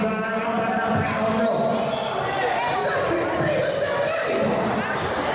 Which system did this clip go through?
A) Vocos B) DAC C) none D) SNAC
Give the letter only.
C